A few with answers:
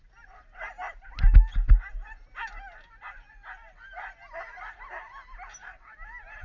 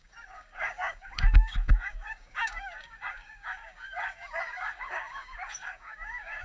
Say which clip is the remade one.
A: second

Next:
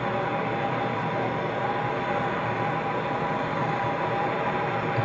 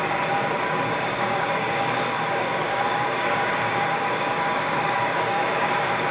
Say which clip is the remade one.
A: second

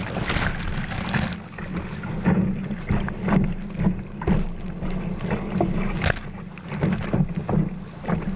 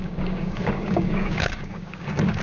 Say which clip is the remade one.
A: second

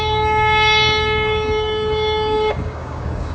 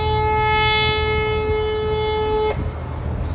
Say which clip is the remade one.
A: first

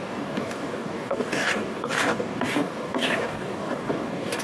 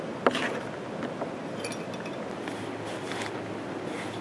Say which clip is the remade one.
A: first